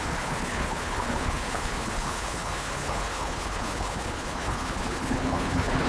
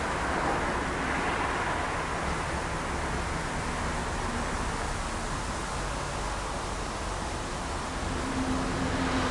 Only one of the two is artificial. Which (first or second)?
first